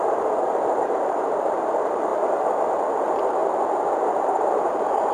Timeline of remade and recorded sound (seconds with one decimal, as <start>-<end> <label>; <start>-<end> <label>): 0.0-3.4 remade; 3.4-4.0 recorded; 4.0-5.1 remade